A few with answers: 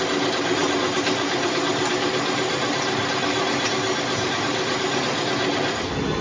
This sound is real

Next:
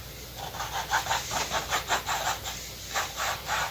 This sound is real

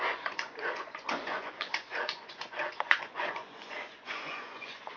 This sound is fake